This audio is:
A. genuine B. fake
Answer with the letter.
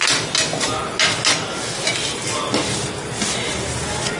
A